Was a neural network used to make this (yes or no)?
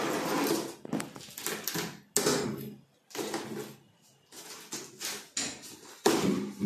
no